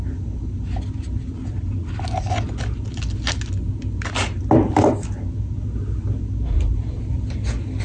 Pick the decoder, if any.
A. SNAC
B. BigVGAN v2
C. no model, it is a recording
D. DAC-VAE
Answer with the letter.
C